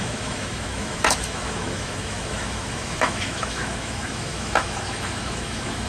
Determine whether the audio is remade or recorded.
remade